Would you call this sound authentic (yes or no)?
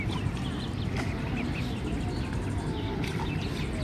yes